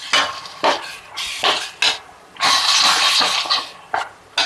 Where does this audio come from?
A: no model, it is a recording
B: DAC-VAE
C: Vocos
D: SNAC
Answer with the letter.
A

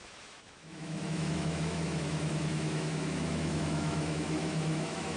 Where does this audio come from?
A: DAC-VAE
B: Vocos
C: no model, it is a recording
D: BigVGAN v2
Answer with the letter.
A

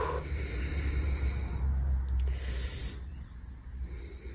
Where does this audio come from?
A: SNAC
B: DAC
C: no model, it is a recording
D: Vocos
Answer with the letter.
C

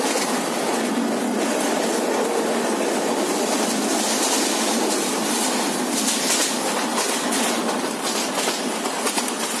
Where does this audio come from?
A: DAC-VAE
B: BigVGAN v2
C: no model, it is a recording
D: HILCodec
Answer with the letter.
C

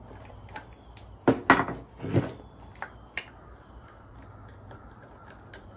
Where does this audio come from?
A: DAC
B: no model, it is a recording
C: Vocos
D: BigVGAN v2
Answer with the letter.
B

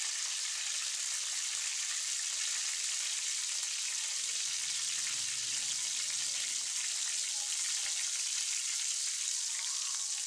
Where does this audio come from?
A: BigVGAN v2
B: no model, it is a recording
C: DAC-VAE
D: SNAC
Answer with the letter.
B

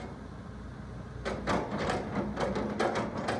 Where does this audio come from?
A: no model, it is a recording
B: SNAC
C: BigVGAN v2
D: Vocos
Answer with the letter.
A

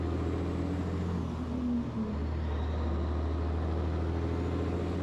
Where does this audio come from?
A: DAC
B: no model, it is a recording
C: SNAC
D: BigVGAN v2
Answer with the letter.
B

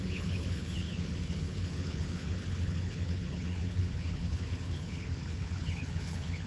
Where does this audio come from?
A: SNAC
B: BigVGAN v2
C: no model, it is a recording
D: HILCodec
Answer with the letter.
D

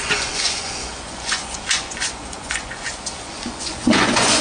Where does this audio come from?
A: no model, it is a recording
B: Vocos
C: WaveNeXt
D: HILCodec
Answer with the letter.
B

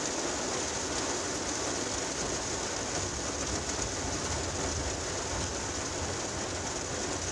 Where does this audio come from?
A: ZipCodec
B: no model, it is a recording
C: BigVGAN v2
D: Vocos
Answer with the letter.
B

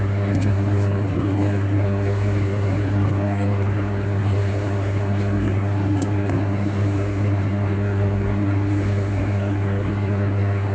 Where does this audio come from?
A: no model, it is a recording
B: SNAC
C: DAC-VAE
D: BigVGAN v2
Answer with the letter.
B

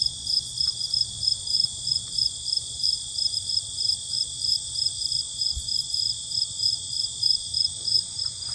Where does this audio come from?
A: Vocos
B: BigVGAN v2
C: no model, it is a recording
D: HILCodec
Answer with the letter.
A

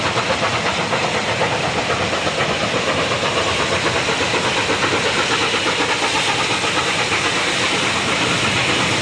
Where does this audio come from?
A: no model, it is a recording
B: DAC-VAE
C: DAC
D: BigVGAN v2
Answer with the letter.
A